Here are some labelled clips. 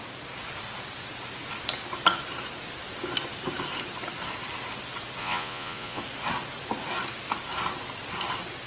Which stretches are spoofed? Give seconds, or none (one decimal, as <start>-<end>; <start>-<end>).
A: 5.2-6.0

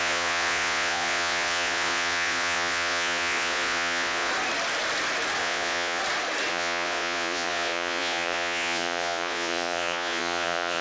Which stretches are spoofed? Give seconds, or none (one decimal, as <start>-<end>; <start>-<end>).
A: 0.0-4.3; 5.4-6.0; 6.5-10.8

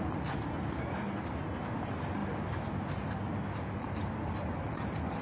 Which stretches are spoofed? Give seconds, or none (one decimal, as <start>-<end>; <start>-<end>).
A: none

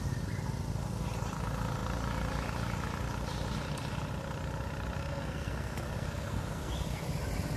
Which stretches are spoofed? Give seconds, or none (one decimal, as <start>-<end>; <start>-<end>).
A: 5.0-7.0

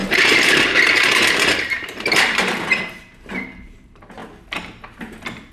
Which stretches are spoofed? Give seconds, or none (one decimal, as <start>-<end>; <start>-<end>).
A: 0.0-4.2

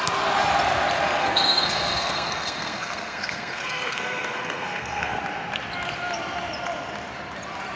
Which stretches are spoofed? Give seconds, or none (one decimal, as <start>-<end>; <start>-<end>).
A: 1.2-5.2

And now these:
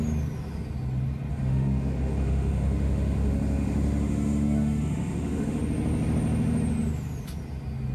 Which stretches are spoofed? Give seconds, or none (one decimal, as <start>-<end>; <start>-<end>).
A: 1.3-5.6

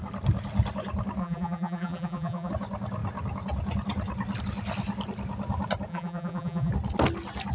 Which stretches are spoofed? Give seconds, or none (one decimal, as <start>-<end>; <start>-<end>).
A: 1.2-2.5; 5.9-6.7